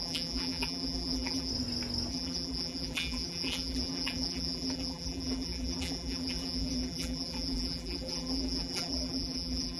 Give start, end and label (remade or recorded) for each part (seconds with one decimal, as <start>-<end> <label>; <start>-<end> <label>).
0.0-1.5 remade; 1.5-2.1 recorded; 2.1-9.8 remade